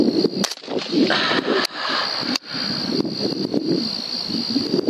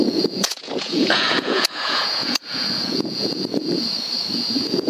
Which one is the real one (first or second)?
first